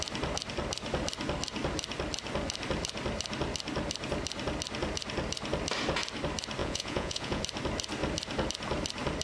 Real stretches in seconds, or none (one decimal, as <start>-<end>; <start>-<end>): 0.0-6.6; 7.4-9.2